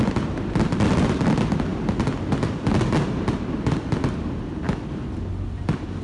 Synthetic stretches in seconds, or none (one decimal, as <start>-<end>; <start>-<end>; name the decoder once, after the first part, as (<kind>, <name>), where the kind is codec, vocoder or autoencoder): none